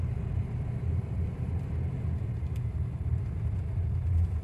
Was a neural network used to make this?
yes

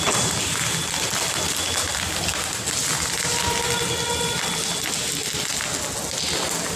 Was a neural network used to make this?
no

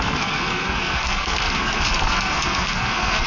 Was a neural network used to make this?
yes